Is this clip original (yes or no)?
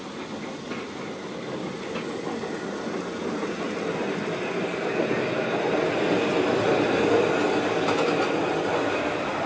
yes